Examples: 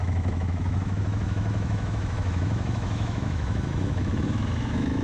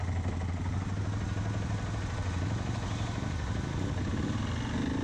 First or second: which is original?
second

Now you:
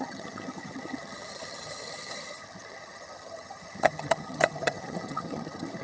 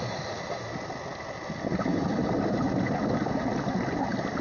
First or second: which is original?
second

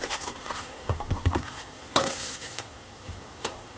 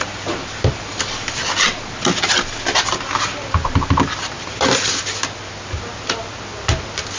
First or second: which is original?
second